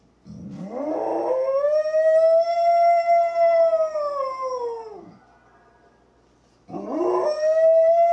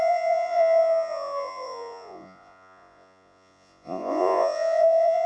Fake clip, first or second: second